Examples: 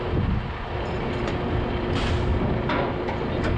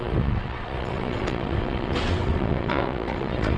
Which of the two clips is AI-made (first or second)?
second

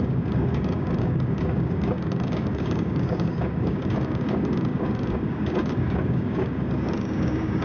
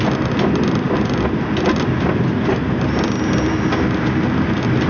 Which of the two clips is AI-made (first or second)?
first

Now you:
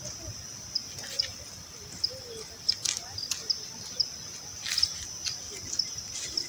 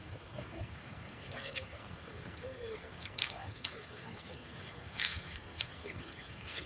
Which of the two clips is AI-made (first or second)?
second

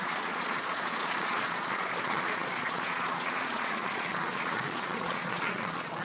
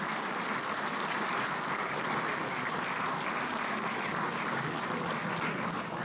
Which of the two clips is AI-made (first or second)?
first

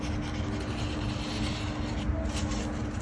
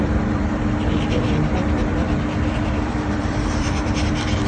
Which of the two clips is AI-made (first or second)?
second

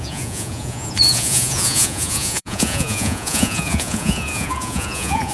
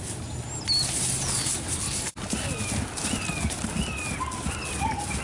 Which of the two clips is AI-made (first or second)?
first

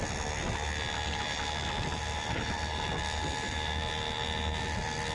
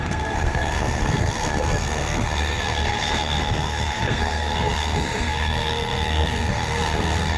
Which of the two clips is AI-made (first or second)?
second